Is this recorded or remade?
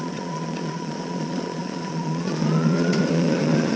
remade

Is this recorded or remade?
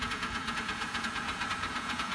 remade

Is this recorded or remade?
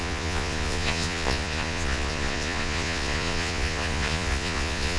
remade